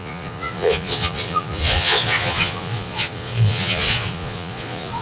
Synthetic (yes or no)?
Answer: yes